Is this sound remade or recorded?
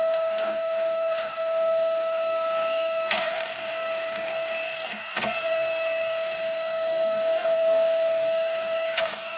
remade